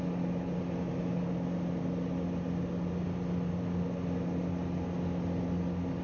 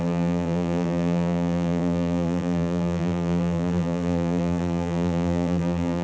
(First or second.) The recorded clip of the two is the first